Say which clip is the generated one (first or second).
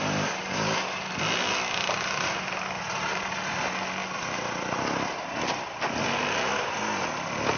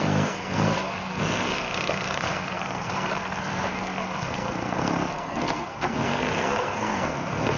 second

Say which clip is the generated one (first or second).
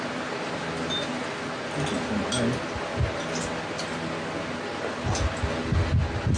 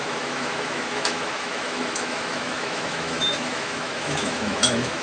second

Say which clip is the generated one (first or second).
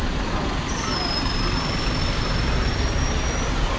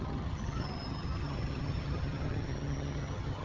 second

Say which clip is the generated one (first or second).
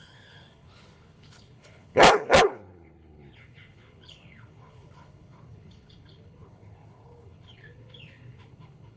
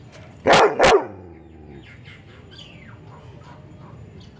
first